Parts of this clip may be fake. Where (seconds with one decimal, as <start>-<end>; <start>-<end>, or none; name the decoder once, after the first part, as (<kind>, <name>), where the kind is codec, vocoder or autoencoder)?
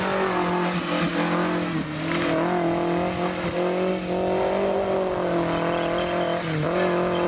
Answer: none